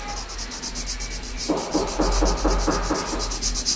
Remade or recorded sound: recorded